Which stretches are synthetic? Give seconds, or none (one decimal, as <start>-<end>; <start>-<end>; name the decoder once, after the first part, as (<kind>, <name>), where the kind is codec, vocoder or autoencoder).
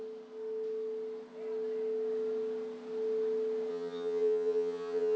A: 3.7-5.2 (vocoder, HiFi-GAN)